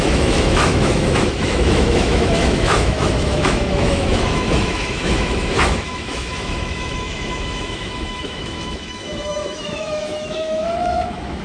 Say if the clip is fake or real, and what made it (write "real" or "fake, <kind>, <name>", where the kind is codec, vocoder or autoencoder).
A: fake, autoencoder, DAC-VAE